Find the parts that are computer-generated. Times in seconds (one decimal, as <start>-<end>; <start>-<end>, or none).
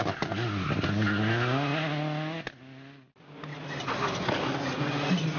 none